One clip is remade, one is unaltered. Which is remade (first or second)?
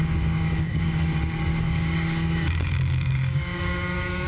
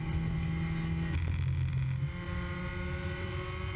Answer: first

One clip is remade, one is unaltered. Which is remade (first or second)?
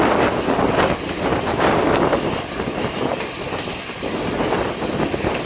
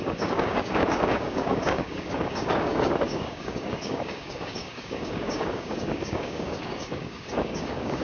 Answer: second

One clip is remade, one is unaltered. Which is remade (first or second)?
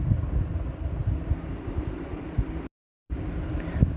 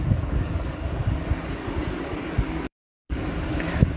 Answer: second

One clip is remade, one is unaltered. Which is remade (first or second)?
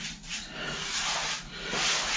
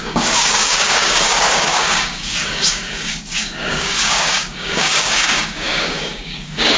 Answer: second